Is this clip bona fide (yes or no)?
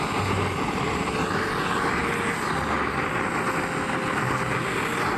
yes